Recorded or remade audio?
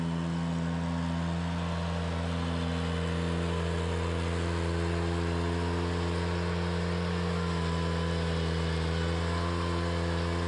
recorded